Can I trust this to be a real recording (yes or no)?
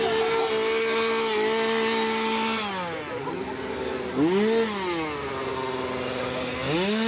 yes